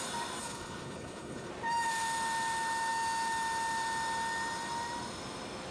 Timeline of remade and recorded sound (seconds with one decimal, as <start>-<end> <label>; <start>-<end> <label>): 0.0-0.4 recorded; 0.4-1.5 remade; 1.5-5.7 recorded